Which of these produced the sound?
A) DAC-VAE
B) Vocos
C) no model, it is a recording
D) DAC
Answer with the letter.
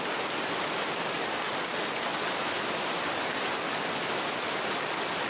C